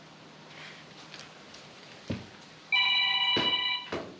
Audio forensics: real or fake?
real